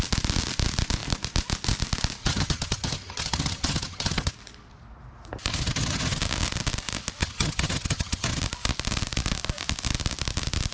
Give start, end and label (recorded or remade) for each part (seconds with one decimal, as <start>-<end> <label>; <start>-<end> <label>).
0.0-2.2 recorded; 2.2-4.3 remade; 4.3-5.5 recorded; 5.5-6.2 remade; 6.2-7.2 recorded; 7.2-8.4 remade; 8.4-10.7 recorded